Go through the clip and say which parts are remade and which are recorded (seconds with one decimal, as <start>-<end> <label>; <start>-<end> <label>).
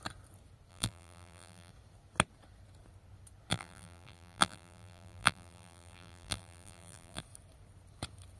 0.0-0.7 recorded; 0.7-1.7 remade; 1.7-3.5 recorded; 3.5-7.2 remade; 7.2-8.4 recorded